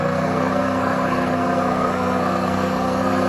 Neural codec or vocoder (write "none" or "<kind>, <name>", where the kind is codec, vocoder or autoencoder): codec, SNAC